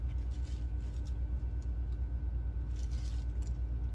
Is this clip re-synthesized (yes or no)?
no